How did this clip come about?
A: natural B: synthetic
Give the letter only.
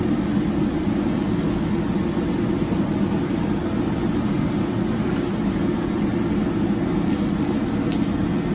A